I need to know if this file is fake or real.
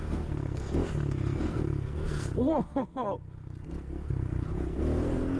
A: fake